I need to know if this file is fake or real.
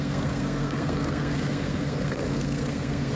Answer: fake